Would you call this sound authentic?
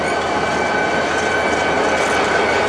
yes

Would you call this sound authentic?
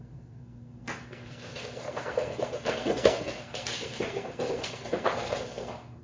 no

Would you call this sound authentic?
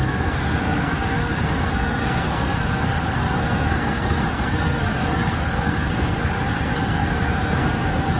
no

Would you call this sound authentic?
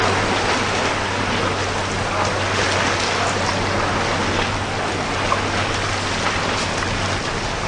yes